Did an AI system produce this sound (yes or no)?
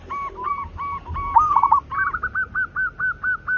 no